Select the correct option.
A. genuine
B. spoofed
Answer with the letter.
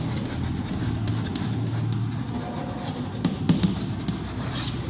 A